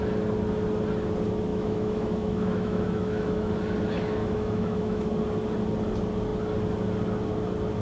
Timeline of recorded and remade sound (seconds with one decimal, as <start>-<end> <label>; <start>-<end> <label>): 0.0-1.5 recorded; 1.5-3.5 remade; 3.5-4.2 recorded; 4.2-5.1 remade; 5.1-7.8 recorded